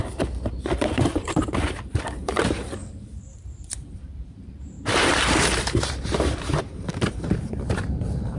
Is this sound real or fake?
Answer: fake